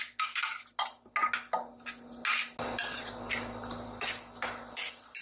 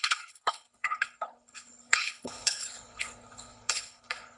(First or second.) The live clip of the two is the first